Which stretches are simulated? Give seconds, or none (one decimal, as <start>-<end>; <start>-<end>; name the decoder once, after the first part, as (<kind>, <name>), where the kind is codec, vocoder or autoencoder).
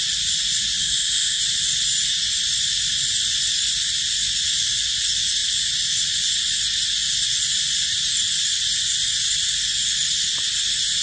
0.8-1.4 (codec, ZipCodec)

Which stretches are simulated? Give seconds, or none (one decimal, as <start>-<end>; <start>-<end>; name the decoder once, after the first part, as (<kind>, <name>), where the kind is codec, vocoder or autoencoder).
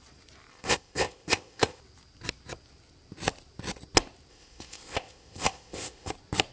0.5-1.8 (codec, ZipCodec); 4.3-6.1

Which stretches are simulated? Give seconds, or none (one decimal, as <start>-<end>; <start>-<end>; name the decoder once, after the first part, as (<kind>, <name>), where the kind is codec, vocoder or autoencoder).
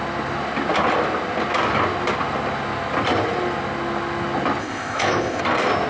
4.6-5.4 (codec, ZipCodec)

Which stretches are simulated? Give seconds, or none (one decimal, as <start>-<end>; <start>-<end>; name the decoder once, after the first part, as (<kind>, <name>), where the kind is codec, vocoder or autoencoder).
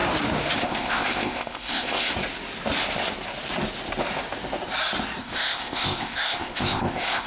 0.6-2.1 (codec, ZipCodec); 5.2-7.3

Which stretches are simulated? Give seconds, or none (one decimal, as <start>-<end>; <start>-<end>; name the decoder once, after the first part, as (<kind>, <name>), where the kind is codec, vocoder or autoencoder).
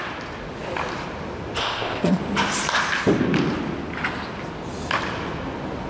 1.6-2.2 (codec, ZipCodec)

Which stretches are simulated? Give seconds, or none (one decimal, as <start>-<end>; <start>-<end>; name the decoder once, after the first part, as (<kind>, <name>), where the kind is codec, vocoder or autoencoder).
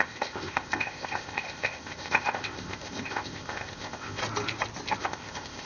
0.0-4.2 (codec, ZipCodec); 5.0-5.7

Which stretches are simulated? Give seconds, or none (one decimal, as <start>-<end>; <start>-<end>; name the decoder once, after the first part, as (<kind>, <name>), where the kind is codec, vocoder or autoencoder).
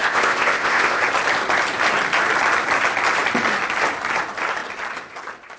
0.0-1.0 (codec, ZipCodec)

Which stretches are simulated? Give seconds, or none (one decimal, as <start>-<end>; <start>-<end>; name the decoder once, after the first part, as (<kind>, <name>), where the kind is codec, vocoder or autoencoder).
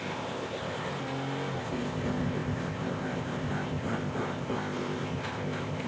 0.0-0.9 (codec, ZipCodec); 1.6-5.9